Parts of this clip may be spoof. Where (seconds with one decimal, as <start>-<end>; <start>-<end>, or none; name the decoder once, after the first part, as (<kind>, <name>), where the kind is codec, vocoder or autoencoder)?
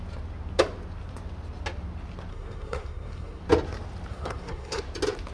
2.3-3.4 (codec, SNAC); 4.1-4.8